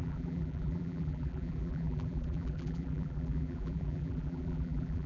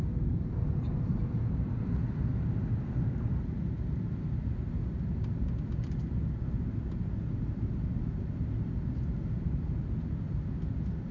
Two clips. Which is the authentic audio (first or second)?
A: second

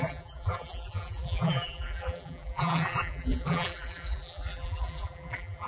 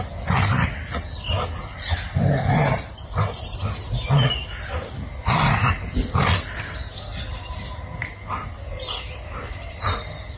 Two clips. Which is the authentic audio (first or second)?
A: second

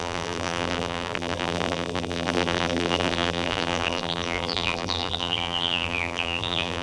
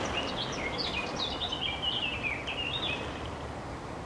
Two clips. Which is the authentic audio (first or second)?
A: second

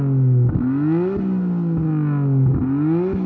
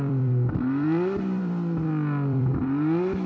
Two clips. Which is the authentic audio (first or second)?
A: first